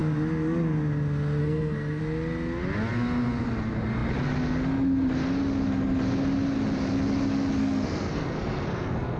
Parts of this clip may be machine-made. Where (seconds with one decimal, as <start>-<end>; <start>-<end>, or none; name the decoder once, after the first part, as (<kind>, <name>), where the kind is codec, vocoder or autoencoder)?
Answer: 1.4-2.0 (codec, SNAC); 7.6-9.2